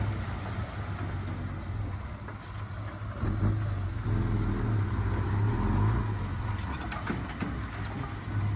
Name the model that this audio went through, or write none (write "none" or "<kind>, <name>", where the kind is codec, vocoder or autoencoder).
none